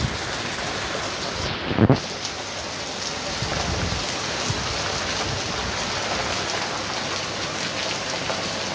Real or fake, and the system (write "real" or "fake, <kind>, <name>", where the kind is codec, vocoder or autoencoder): real